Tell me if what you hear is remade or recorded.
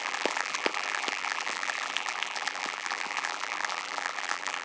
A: remade